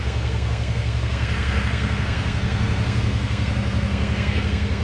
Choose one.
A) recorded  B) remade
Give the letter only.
B